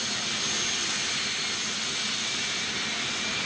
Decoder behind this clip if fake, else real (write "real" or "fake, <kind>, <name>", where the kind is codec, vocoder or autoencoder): real